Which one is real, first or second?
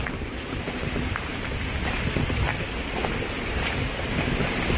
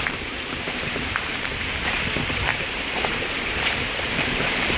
first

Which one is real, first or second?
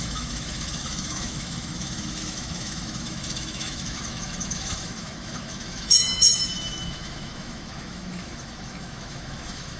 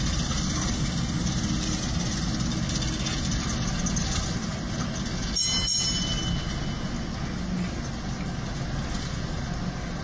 second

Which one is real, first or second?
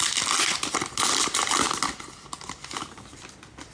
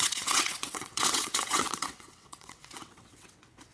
first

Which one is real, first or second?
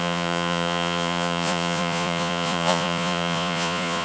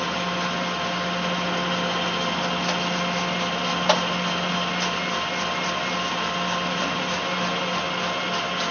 second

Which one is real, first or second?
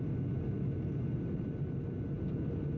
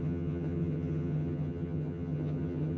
first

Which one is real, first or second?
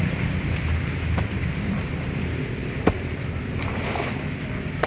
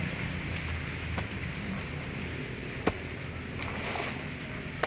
second